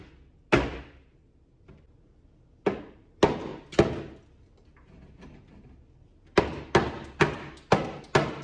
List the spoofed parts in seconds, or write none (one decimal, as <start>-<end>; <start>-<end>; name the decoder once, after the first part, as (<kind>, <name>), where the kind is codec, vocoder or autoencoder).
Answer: none